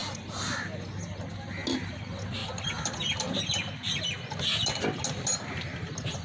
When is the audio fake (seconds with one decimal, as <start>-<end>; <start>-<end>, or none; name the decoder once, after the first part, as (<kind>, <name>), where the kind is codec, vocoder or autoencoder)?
2.4-3.4 (vocoder, BigVGAN v2)